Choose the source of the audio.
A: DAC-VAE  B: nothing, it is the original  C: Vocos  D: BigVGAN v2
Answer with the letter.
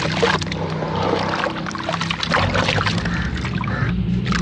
B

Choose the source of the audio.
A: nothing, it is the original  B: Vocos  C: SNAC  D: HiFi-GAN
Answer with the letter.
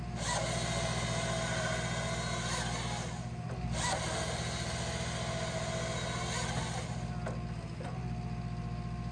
A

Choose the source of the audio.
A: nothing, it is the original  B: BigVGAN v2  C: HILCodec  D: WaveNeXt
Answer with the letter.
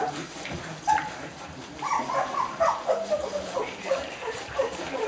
B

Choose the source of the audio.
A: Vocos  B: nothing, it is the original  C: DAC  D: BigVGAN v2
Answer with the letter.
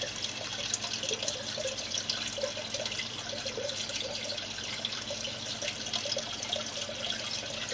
B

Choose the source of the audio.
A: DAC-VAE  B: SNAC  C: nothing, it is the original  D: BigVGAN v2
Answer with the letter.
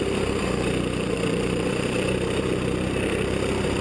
D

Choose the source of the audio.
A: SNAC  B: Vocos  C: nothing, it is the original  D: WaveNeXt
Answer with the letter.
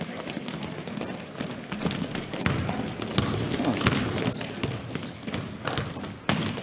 C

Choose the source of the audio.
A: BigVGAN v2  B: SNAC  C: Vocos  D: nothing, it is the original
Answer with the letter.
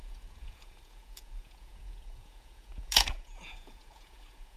C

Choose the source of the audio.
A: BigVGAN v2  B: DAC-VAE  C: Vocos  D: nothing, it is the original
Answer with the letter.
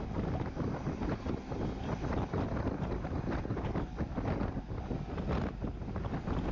D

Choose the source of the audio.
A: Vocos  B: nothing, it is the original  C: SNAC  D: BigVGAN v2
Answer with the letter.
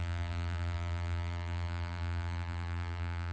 D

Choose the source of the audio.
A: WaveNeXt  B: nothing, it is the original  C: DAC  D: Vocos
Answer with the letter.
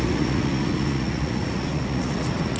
D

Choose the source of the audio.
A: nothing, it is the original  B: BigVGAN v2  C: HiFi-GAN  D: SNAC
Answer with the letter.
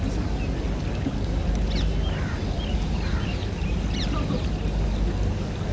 A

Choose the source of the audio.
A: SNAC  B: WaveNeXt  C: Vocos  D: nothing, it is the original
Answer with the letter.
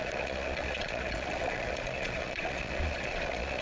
C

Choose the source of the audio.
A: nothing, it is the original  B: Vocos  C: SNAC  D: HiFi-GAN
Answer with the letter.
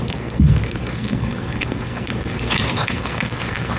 C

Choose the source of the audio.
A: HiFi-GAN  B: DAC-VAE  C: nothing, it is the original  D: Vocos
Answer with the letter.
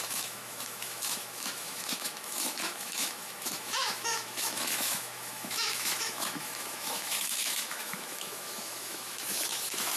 B